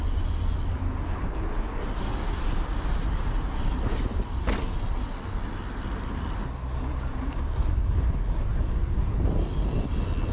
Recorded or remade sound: recorded